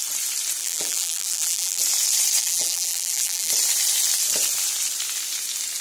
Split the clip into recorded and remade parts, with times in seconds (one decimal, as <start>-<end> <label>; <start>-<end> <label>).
0.0-0.6 recorded; 0.6-1.8 remade; 1.8-2.4 recorded; 2.4-3.5 remade; 3.5-5.8 recorded